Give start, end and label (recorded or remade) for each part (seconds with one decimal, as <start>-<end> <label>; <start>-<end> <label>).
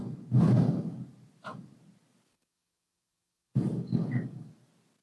0.0-2.3 recorded; 2.3-4.5 remade; 4.5-5.0 recorded